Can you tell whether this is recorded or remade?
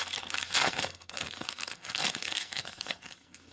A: remade